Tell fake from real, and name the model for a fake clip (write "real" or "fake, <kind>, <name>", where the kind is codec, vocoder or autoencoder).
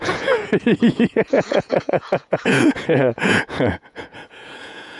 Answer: fake, vocoder, Vocos